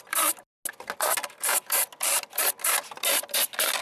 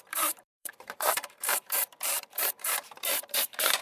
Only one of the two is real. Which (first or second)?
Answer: first